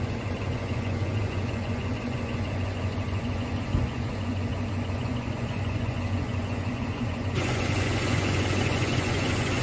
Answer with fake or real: fake